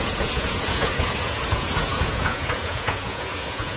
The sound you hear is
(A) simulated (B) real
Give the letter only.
A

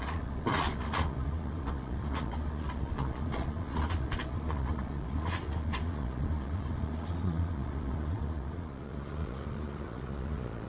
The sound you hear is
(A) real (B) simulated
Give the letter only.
B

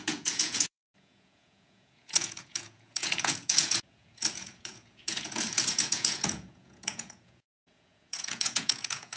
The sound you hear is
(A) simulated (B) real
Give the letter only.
A